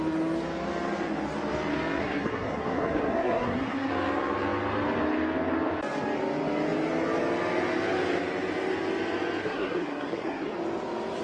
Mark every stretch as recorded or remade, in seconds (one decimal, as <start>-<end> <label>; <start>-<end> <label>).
0.0-2.0 recorded; 2.0-3.9 remade; 3.9-9.4 recorded; 9.4-10.5 remade; 10.5-11.2 recorded